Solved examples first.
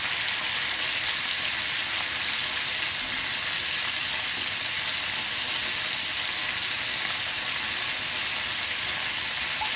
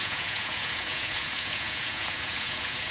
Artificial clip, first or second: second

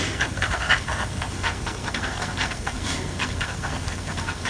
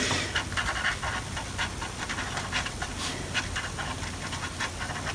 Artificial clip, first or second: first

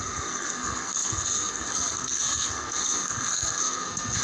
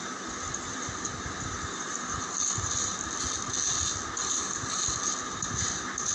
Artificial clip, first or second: first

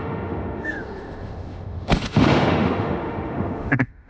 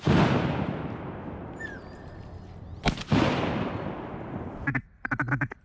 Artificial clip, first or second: first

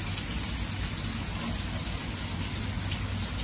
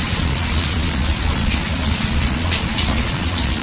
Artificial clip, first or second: second